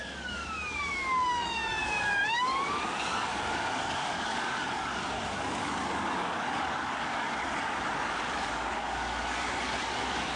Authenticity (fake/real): fake